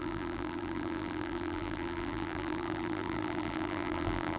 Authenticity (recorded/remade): remade